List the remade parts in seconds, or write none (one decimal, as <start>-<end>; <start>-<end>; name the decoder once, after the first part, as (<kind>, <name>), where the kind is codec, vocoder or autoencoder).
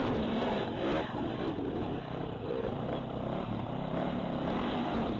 1.8-5.2 (vocoder, BigVGAN v2)